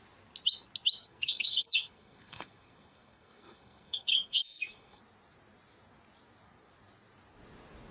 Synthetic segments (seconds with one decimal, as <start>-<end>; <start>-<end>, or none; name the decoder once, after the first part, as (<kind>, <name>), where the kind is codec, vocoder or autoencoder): 1.0-5.0 (codec, SNAC)